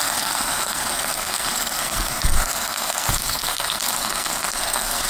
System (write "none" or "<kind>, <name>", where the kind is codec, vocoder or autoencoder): codec, SNAC